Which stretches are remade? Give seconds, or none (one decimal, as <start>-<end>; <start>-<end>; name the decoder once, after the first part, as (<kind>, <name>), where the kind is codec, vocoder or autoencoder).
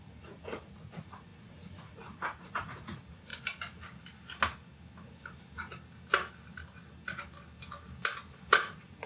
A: 0.0-3.3 (vocoder, Vocos); 8.5-9.1